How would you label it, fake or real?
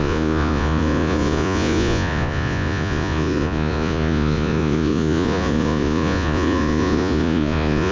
fake